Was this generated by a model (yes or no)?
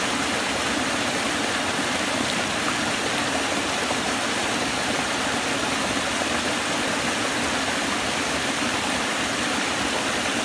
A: no